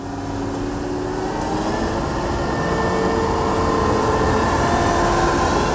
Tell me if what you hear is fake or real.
real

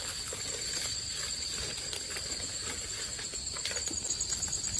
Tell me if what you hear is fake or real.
real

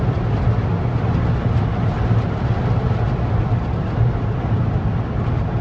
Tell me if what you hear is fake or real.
real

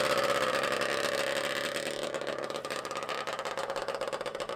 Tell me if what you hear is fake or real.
real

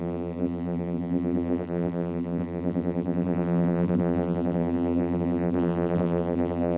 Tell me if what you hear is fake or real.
fake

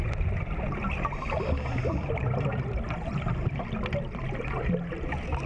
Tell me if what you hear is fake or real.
real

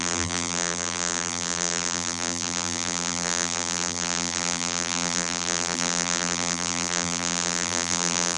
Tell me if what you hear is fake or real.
fake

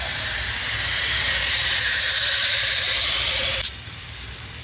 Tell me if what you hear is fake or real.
fake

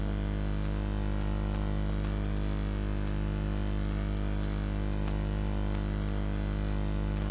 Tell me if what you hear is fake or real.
real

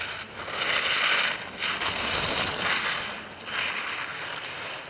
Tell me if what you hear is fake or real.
real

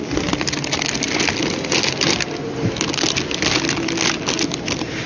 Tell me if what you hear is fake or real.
real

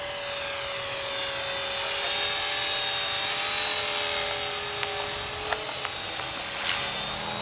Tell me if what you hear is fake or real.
real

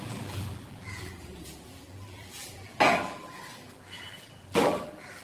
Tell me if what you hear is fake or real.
fake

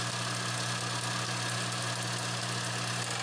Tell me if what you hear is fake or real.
real